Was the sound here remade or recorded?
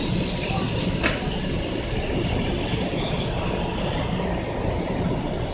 recorded